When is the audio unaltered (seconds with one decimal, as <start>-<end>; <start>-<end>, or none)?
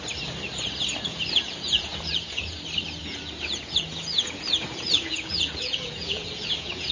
0.0-1.1; 2.6-3.0